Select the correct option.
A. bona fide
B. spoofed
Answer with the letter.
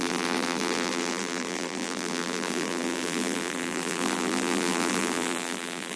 B